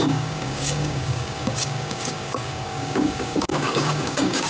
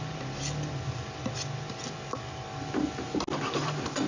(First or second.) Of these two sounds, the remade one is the first